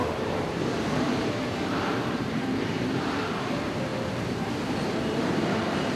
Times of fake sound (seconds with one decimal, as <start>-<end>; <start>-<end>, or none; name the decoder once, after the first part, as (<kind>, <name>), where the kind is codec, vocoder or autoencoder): 0.0-6.0 (vocoder, BigVGAN v2)